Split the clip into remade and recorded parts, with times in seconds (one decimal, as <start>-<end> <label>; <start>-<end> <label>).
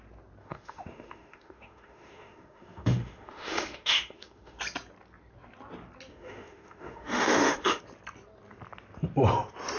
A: 0.0-0.4 recorded; 0.4-4.6 remade; 4.6-6.1 recorded; 6.1-7.8 remade; 7.8-9.8 recorded